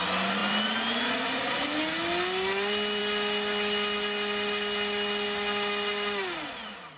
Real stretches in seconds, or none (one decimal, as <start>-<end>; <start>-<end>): 0.0-7.0

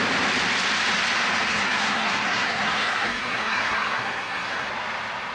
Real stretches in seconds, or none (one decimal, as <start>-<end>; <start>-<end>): 0.0-1.5; 4.7-5.3

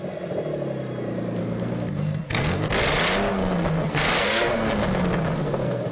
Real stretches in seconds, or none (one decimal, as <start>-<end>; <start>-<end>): 0.0-1.4; 2.7-3.3

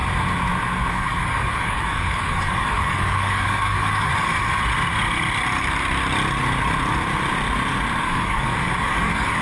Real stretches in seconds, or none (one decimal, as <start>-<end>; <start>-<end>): 0.0-0.9; 4.1-8.0